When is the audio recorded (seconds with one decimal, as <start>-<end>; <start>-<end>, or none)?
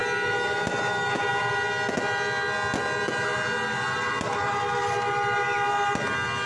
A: 0.0-6.5